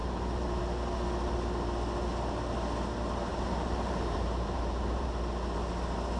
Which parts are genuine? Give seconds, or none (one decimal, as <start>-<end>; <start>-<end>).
0.6-3.3; 5.1-6.2